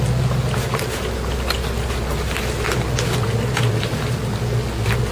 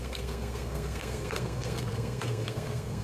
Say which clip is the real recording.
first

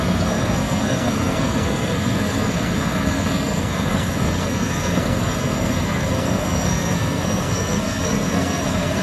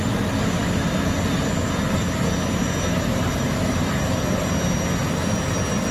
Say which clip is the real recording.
second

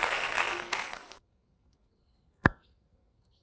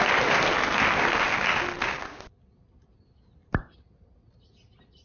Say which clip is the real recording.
second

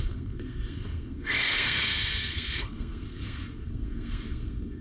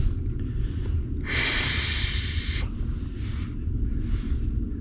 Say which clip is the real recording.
second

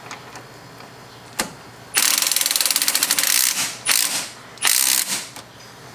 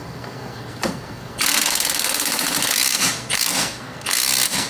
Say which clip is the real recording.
first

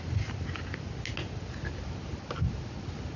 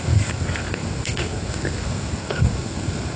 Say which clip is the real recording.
first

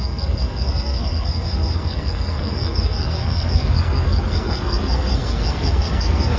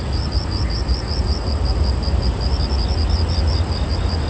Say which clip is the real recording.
second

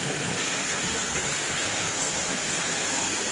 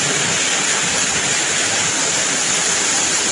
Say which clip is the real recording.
second